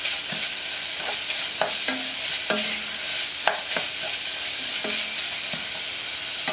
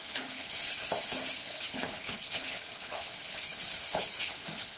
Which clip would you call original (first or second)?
first